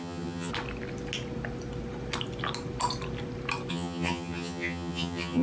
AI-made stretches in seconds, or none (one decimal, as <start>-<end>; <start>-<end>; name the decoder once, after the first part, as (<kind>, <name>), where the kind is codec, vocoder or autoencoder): 0.0-0.5 (vocoder, HiFi-GAN); 3.7-5.4